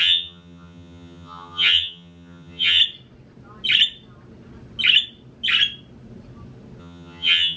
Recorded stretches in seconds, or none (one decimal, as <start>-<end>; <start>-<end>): 2.8-6.8